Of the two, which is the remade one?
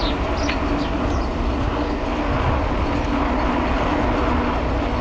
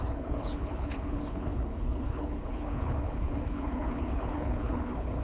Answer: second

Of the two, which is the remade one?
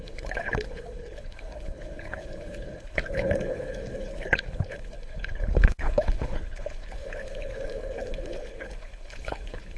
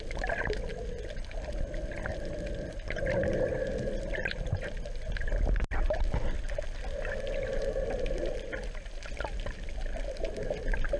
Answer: first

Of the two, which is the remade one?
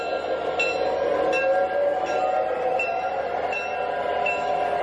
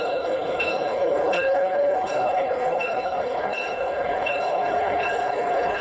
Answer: second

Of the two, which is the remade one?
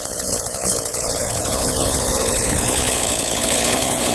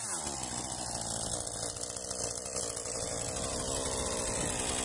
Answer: first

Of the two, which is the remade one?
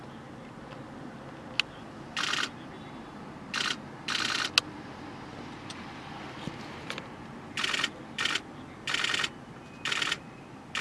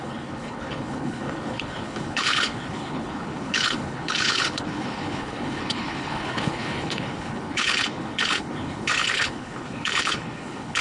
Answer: second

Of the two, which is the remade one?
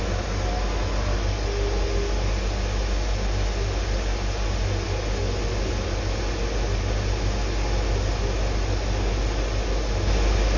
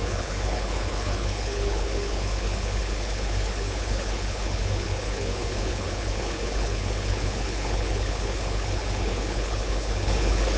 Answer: second